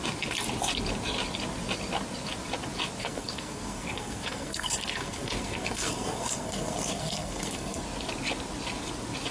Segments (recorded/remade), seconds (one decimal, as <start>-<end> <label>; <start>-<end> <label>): 0.0-3.0 recorded; 3.0-7.8 remade; 7.8-9.3 recorded